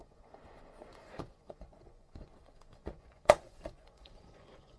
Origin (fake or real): fake